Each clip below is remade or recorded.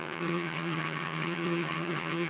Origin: remade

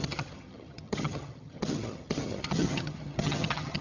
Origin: remade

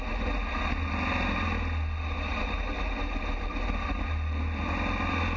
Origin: recorded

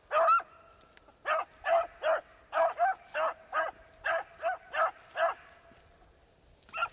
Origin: recorded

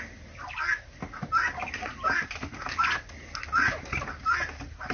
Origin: recorded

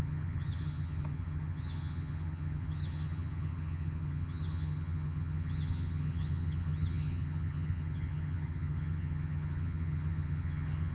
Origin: remade